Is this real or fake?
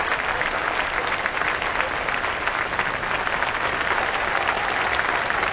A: real